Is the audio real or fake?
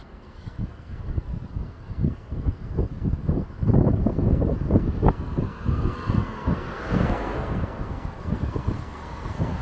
fake